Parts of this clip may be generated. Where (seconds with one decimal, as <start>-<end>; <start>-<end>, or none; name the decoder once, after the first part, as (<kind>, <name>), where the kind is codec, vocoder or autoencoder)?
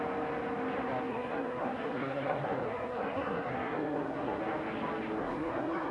1.1-4.4 (codec, SNAC); 5.2-5.9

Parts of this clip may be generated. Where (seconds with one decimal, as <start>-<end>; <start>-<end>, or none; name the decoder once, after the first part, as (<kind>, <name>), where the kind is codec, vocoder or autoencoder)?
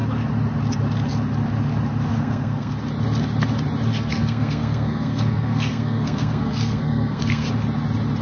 2.1-2.7 (codec, SNAC); 3.9-7.5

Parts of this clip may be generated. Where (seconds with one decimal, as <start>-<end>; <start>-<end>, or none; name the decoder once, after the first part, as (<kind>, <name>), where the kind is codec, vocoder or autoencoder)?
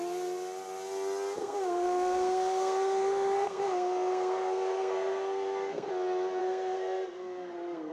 1.4-5.9 (codec, SNAC); 6.4-7.9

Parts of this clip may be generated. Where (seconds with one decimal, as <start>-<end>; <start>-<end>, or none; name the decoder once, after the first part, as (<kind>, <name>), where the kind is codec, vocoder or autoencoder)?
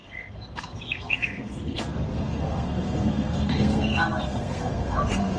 0.0-5.4 (codec, SNAC)